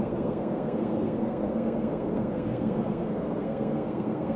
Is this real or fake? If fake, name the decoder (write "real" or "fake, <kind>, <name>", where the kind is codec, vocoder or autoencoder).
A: fake, codec, SNAC